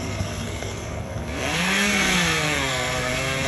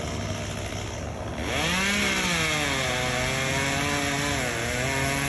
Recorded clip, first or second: second